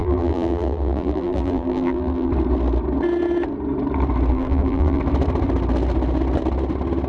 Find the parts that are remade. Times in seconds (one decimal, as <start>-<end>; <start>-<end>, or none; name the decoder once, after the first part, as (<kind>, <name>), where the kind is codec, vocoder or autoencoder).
0.0-2.3 (vocoder, BigVGAN v2); 4.3-5.0